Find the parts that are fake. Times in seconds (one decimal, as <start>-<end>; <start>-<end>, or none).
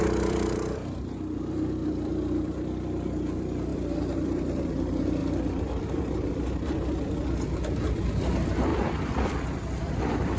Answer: 0.0-10.4